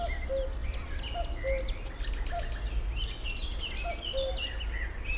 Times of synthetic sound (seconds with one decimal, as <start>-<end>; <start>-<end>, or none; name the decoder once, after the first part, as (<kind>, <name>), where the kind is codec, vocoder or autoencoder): none